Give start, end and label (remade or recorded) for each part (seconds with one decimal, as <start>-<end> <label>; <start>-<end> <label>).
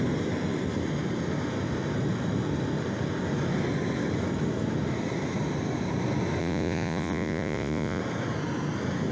0.0-6.4 recorded; 6.4-8.0 remade; 8.0-9.1 recorded